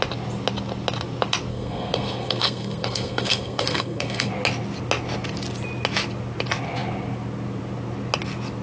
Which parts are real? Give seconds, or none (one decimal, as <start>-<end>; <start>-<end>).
0.0-1.5; 4.3-8.6